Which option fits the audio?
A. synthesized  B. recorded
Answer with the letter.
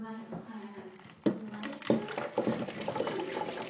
B